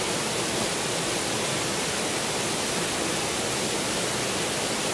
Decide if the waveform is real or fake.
real